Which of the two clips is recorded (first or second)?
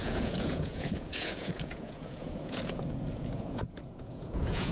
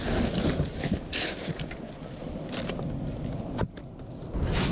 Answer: second